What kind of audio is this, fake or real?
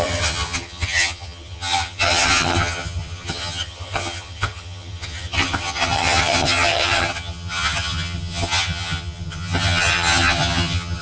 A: fake